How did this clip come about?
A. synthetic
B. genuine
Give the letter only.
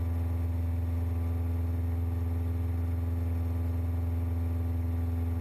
B